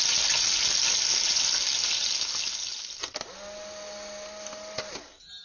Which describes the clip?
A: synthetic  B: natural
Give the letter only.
B